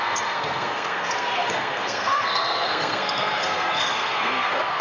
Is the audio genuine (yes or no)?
no